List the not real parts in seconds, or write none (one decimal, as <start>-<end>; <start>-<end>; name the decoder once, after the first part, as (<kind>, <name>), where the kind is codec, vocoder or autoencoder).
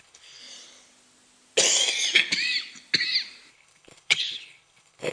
0.0-0.4 (codec, HILCodec); 3.5-5.1